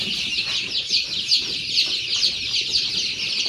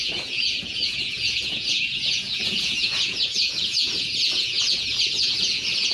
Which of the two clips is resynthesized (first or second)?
second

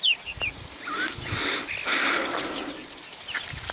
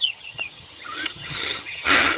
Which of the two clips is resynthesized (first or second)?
second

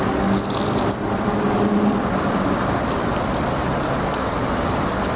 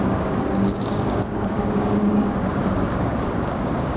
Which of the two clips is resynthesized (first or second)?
second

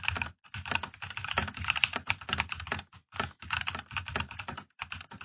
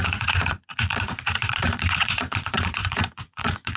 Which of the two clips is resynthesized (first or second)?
second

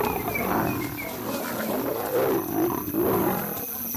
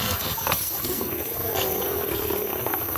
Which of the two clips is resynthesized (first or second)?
second